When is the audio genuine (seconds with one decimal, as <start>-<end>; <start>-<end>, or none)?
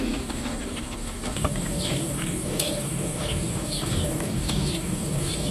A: none